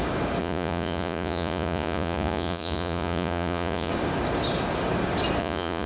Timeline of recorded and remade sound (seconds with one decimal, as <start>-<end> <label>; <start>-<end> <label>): 0.0-0.4 recorded; 0.4-3.9 remade; 3.9-5.4 recorded; 5.4-5.9 remade